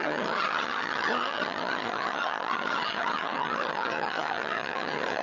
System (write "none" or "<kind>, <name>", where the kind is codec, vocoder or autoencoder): vocoder, HiFi-GAN